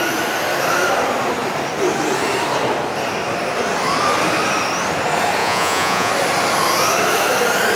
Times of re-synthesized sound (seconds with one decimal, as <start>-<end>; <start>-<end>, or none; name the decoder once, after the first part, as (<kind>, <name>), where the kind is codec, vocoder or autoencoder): 5.4-6.1 (vocoder, Vocos)